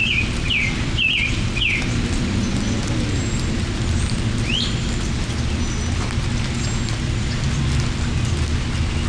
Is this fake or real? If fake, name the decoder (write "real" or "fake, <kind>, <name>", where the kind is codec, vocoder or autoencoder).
real